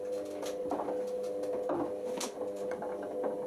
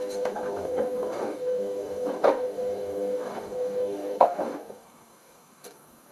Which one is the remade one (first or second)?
second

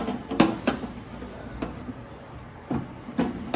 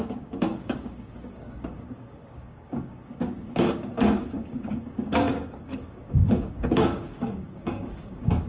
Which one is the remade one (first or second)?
second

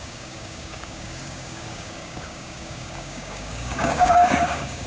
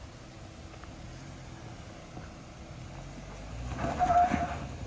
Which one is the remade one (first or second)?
first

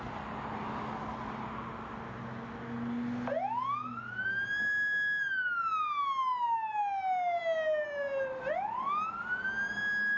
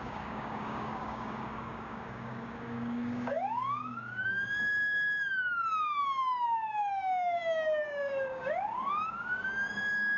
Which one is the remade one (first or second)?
second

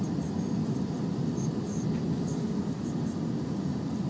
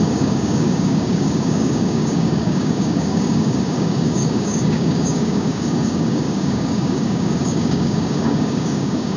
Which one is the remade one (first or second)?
second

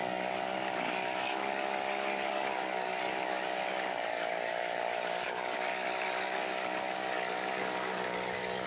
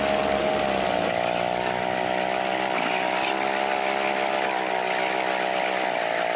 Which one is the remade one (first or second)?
first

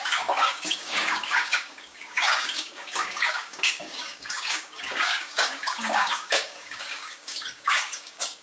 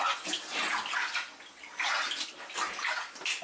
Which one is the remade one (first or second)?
first